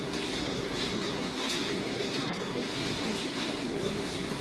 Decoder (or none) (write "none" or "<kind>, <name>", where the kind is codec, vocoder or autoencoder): codec, SNAC